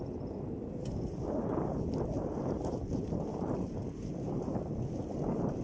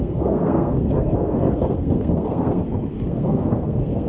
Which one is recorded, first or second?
first